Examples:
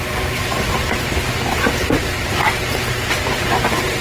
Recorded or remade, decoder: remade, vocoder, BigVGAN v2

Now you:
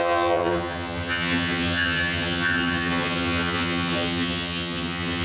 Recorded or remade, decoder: remade, vocoder, HiFi-GAN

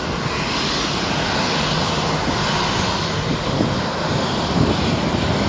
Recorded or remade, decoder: recorded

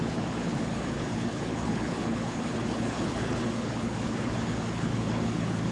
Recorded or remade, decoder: remade, codec, HILCodec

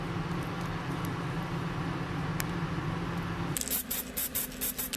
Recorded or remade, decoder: recorded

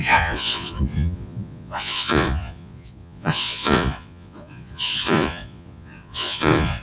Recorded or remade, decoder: remade, vocoder, Vocos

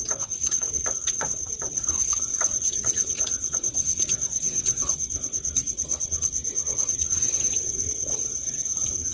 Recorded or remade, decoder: remade, vocoder, WaveNeXt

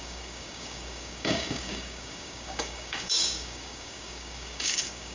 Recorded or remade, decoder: remade, codec, DAC